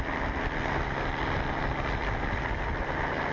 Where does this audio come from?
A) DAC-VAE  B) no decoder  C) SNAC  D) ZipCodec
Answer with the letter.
B